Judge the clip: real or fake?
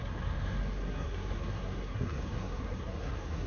fake